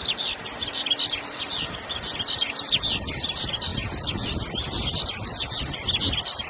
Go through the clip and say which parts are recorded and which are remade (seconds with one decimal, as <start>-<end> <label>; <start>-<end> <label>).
0.0-3.7 remade; 3.7-5.6 recorded; 5.6-6.5 remade